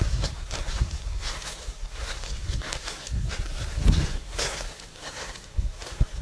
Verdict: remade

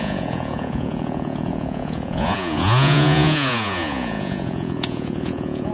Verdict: remade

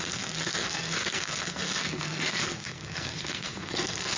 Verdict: remade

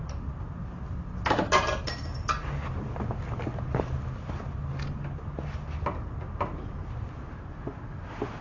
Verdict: recorded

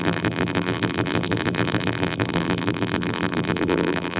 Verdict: remade